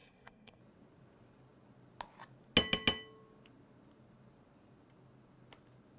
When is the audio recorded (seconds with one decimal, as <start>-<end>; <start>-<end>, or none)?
0.6-6.0